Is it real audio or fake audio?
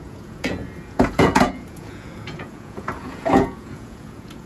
fake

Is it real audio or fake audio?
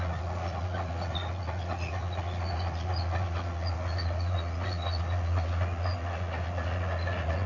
fake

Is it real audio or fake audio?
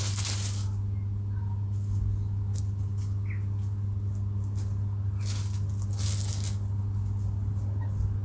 real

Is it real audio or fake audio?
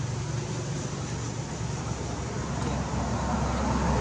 real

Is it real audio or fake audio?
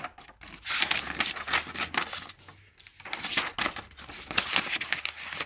real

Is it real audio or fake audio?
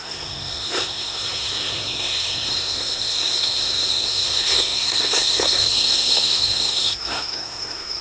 fake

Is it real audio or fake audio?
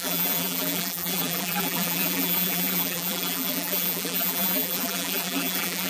fake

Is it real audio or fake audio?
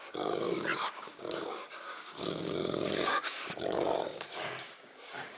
fake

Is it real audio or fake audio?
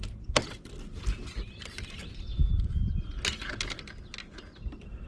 real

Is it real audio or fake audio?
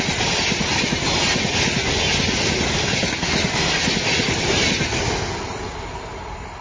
real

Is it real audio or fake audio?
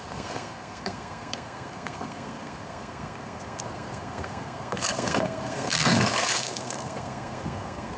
fake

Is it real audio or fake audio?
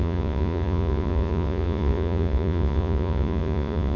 fake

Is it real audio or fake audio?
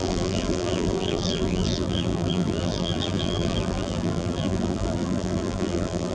fake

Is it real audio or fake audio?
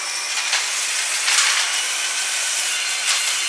real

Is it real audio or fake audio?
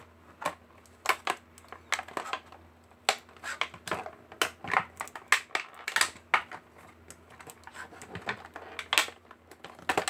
real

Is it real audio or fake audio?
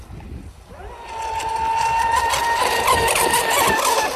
real